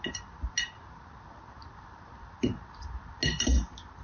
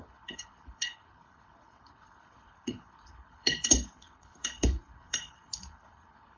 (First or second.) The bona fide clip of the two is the first